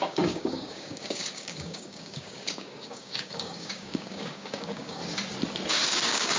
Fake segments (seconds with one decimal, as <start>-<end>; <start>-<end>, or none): 0.0-5.0; 5.7-6.4